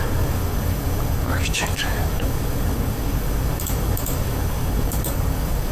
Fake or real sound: fake